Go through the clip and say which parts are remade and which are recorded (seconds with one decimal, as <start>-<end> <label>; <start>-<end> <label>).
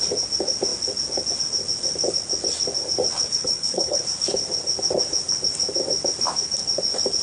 0.0-3.2 recorded; 3.2-4.0 remade; 4.0-7.2 recorded